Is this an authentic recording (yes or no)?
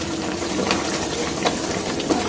yes